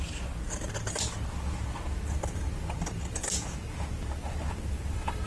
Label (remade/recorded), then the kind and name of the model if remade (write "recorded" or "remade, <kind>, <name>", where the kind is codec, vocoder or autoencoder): recorded